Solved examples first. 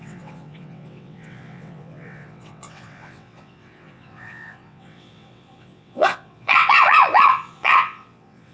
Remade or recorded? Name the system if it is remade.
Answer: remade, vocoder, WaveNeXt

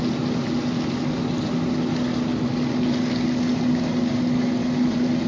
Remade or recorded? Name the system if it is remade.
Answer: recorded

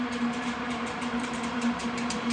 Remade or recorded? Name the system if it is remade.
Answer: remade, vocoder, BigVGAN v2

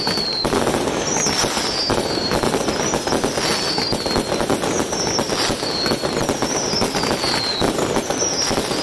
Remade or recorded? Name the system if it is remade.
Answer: recorded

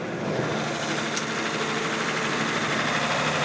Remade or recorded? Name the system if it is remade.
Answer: recorded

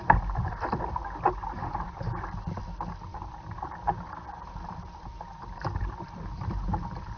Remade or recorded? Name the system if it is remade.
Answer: remade, vocoder, BigVGAN v2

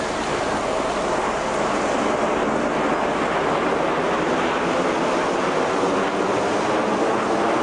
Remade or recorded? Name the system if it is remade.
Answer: recorded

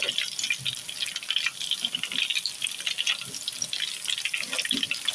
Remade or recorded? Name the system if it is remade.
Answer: recorded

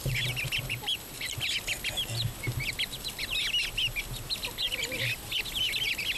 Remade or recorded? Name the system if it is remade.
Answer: recorded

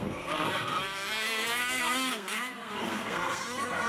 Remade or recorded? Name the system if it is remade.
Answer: remade, codec, SNAC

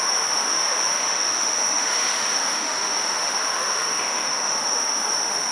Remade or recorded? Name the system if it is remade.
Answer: remade, autoencoder, DAC-VAE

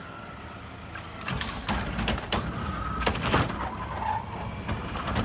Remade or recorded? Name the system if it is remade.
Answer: recorded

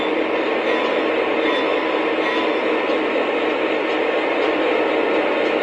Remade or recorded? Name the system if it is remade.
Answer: recorded